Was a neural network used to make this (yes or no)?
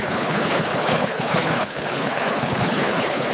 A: yes